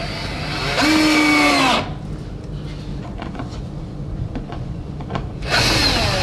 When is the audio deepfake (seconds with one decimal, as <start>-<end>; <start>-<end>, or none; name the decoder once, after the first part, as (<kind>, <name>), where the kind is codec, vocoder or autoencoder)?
2.9-5.7 (vocoder, Vocos)

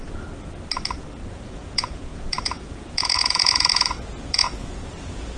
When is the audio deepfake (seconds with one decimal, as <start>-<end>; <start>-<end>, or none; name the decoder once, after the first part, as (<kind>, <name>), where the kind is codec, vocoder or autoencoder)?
1.3-5.4 (vocoder, Vocos)

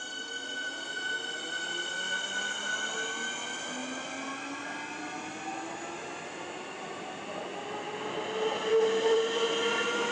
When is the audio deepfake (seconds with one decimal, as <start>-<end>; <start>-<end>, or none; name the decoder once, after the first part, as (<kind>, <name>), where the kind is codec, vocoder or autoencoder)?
0.5-1.1 (vocoder, Vocos)

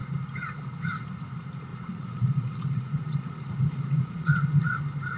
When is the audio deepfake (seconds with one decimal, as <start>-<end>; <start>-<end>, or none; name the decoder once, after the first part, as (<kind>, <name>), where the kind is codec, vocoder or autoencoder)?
1.7-4.8 (vocoder, Vocos)

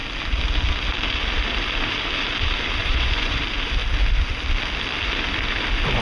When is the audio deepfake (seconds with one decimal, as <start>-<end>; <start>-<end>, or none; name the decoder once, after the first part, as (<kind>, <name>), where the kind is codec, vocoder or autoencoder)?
2.8-3.4 (vocoder, Vocos)

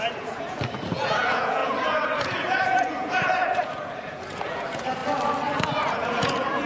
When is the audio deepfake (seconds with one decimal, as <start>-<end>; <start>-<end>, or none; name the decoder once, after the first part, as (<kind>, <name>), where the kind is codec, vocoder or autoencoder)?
0.0-5.0 (vocoder, Vocos); 5.6-6.7